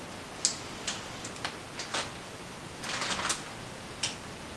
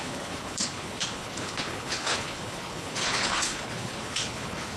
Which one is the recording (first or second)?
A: first